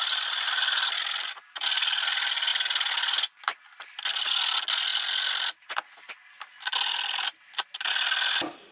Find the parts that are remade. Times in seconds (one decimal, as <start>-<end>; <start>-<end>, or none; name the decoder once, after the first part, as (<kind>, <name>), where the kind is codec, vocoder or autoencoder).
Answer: none